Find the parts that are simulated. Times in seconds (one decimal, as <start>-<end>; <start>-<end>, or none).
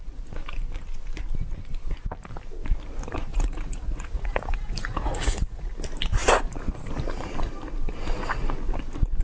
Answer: 3.3-5.7